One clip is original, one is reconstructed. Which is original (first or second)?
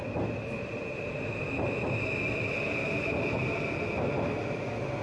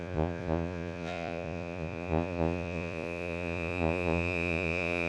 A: first